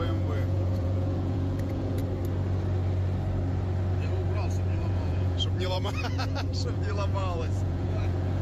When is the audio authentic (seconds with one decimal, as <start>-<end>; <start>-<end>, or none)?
2.0-4.8